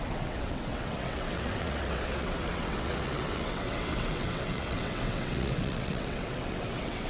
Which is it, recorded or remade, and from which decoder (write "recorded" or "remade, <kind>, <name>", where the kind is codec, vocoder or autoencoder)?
remade, vocoder, WaveNeXt